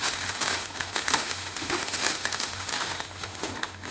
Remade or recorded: remade